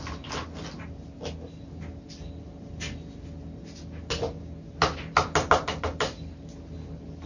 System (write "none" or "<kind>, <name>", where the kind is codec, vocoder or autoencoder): none